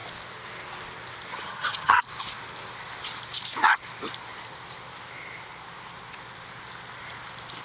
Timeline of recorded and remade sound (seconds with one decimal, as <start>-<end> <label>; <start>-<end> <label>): 0.0-1.3 recorded; 1.3-2.0 remade; 2.0-7.6 recorded

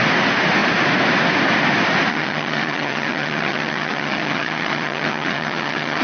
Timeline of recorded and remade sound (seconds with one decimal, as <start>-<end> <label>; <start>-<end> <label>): 0.0-2.1 recorded; 2.1-6.0 remade

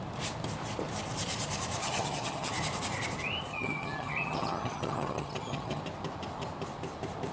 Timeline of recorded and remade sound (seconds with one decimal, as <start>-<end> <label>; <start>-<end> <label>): 0.0-1.8 recorded; 1.8-2.5 remade; 2.5-3.5 recorded; 3.5-5.8 remade; 5.8-7.3 recorded

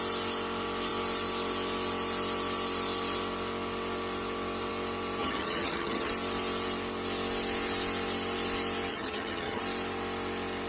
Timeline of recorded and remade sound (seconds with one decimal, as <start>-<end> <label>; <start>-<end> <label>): 0.0-5.2 recorded; 5.2-6.1 remade; 6.1-8.9 recorded; 8.9-9.6 remade; 9.6-10.7 recorded

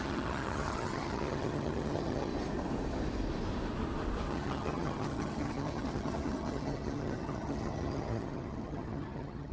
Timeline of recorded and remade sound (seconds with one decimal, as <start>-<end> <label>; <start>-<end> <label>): 0.0-2.3 remade; 2.3-4.3 recorded; 4.3-9.5 remade

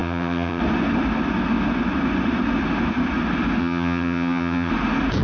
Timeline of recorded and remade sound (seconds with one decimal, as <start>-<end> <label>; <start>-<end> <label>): 0.0-0.6 remade; 0.6-3.6 recorded; 3.6-4.7 remade; 4.7-5.2 recorded

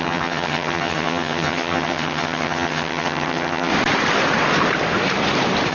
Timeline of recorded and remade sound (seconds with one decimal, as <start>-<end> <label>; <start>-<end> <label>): 0.0-3.7 remade; 3.7-5.7 recorded